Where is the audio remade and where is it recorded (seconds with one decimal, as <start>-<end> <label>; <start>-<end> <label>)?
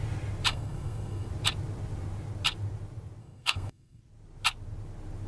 0.0-0.5 recorded; 0.5-1.3 remade; 1.3-3.2 recorded; 3.2-4.0 remade; 4.0-5.3 recorded